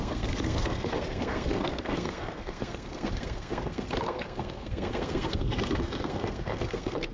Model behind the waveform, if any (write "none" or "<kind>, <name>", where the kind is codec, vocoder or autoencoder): codec, SNAC